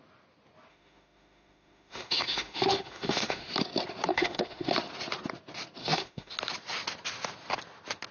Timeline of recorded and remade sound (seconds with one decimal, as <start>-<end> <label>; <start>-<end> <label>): 0.0-0.7 recorded; 0.7-3.5 remade; 3.5-4.1 recorded; 4.1-4.7 remade; 4.7-5.8 recorded; 5.8-6.3 remade; 6.3-8.1 recorded